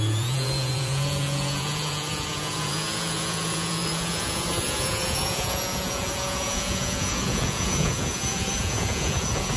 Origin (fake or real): fake